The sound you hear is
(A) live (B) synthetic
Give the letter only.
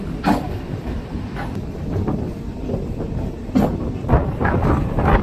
A